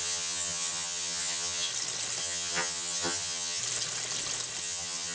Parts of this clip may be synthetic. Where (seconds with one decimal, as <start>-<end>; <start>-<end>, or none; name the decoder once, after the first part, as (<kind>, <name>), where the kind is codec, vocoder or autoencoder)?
0.0-1.7 (vocoder, HiFi-GAN); 2.2-3.6; 4.6-5.1